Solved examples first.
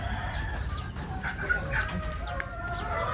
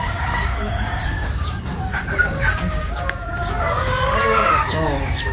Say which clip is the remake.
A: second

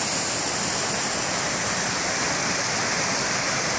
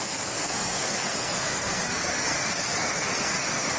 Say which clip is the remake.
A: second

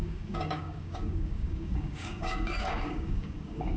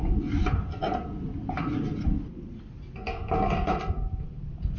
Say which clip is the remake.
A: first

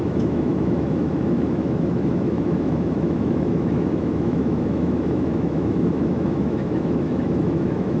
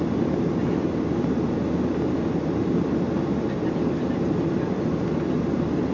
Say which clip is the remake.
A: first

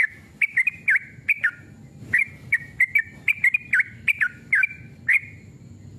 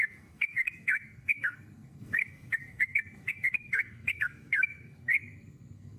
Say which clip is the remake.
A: second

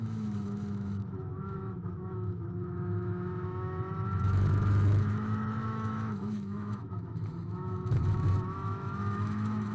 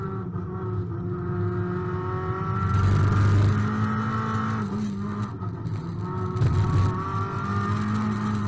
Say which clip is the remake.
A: first